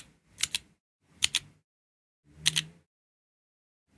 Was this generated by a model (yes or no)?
no